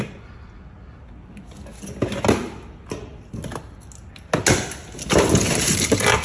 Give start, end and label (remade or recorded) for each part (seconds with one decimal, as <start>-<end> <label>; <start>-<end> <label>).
0.0-5.4 recorded; 5.4-6.2 remade